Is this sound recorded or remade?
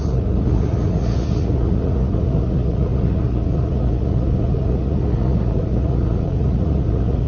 remade